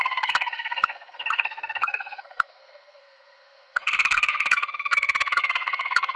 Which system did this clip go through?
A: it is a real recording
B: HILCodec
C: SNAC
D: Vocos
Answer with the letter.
C